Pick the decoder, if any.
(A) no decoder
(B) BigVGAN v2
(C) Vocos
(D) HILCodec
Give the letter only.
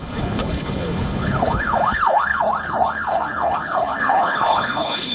D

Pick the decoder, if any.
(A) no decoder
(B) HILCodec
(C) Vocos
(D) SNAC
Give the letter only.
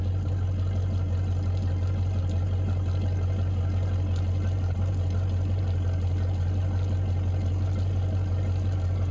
A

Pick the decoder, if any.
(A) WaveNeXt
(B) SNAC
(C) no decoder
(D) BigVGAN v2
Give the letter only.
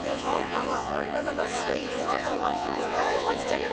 A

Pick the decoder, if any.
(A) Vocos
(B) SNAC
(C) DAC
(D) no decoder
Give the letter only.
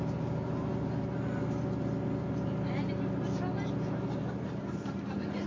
D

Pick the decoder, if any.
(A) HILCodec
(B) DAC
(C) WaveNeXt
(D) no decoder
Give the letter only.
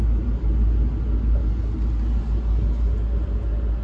D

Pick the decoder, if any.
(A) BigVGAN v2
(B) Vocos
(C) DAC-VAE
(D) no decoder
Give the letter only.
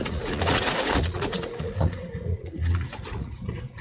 B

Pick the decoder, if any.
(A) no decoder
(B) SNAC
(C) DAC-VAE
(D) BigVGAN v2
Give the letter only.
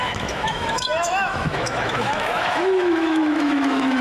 C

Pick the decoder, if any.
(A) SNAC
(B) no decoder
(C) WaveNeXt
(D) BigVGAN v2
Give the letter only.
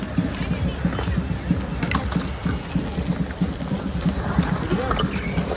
B